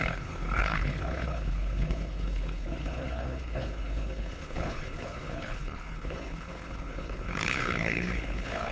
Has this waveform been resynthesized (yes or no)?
yes